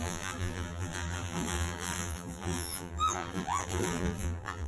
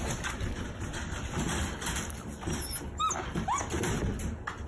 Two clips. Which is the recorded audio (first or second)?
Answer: second